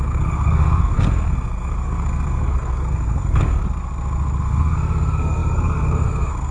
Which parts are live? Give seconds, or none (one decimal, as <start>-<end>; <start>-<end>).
3.6-4.4